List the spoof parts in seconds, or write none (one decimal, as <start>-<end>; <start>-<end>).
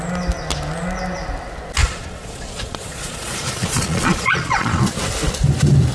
1.8-4.8